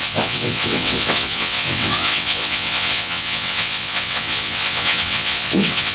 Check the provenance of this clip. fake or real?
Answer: fake